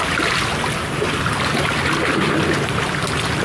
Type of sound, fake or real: real